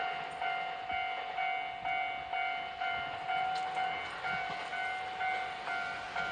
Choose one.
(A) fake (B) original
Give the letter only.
B